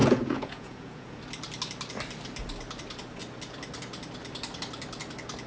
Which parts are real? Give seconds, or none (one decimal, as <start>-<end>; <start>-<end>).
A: 1.2-5.5